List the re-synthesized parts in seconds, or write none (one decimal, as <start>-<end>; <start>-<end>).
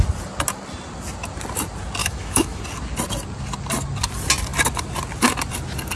2.0-2.6